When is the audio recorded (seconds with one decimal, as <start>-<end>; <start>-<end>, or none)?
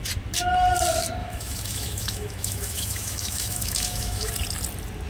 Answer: 0.0-1.2; 4.3-5.1